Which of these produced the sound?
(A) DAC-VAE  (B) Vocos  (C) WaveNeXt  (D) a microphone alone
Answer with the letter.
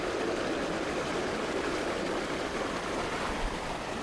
D